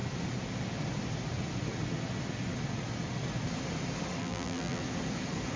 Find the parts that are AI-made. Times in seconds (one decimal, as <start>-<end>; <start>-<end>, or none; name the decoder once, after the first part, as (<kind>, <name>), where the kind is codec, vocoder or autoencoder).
4.2-4.8 (vocoder, BigVGAN v2)